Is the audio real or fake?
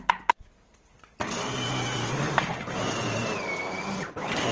real